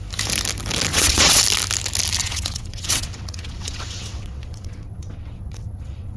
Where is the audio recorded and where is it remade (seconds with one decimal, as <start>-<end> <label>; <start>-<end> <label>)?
0.0-0.9 recorded; 0.9-1.4 remade; 1.4-2.2 recorded; 2.2-6.2 remade